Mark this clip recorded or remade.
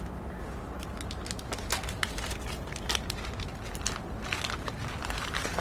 recorded